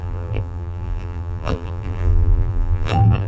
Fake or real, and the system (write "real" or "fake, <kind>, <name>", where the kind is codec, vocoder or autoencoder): fake, vocoder, BigVGAN v2